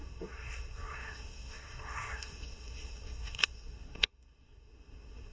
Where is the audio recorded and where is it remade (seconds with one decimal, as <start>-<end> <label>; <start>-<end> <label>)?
0.0-5.3 remade